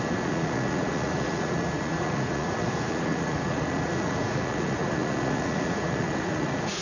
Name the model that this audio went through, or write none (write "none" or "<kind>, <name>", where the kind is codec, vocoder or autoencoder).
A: vocoder, Vocos